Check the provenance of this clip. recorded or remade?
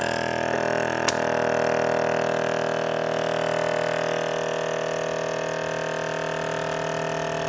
recorded